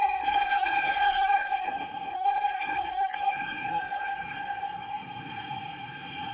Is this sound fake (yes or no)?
yes